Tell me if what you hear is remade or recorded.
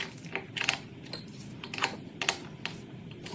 recorded